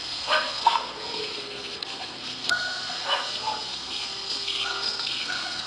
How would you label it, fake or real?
fake